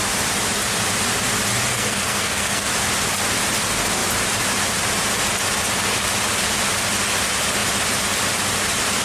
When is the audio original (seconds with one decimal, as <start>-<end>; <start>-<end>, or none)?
0.0-1.7; 2.7-9.0